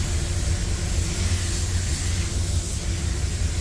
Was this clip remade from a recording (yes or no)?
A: no